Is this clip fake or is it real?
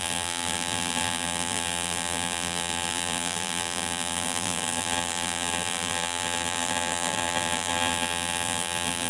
fake